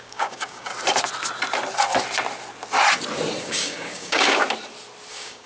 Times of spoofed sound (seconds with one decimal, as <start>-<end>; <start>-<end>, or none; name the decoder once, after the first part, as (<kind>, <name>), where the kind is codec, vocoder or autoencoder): 0.0-0.7 (codec, DAC); 3.4-4.4; 5.1-5.5